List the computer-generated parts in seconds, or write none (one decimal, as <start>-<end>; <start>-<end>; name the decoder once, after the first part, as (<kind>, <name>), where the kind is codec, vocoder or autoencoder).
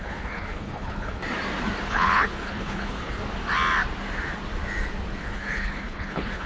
0.0-1.2 (codec, HILCodec); 1.9-3.2; 5.2-6.5